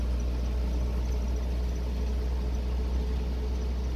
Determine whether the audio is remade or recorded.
recorded